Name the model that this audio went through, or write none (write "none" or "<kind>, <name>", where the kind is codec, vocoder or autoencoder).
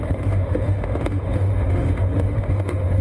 autoencoder, DAC-VAE